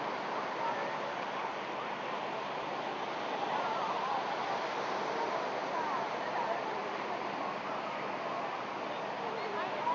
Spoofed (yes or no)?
no